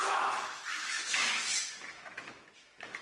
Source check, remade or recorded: remade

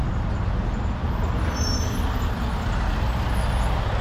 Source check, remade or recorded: recorded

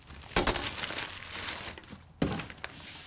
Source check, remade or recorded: recorded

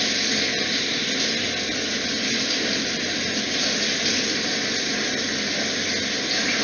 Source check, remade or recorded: recorded